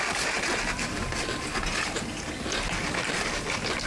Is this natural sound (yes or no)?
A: yes